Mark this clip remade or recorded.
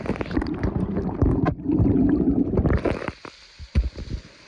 recorded